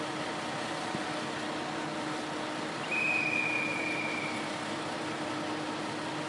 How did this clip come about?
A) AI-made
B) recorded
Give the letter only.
B